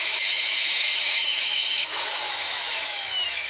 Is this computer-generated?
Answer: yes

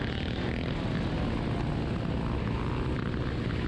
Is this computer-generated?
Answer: no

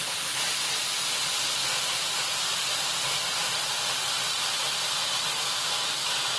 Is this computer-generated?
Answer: no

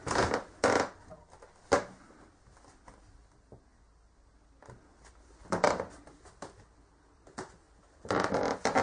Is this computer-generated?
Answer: no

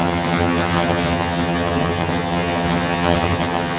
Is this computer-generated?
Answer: yes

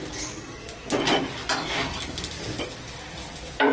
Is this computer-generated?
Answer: yes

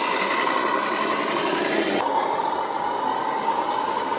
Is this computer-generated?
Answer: no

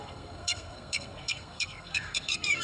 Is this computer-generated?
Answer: yes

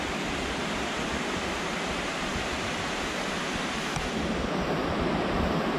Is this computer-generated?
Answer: no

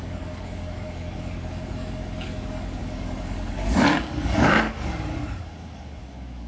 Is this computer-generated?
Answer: yes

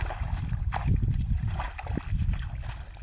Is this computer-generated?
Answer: no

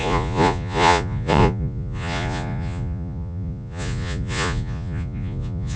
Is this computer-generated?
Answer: yes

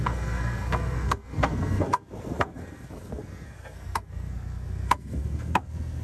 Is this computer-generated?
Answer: yes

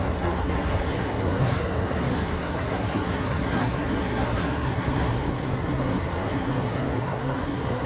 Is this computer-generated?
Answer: yes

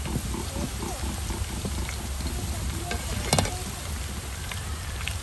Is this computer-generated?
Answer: no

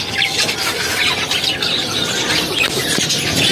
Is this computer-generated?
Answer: no